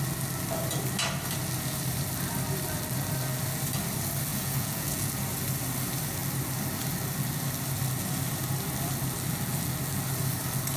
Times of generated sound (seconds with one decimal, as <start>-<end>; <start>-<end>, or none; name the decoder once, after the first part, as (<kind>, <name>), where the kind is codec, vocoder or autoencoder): 4.3-5.1 (vocoder, Vocos)